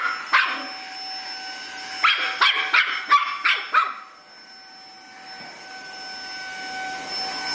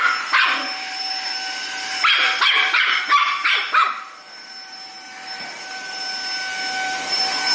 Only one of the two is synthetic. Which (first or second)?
second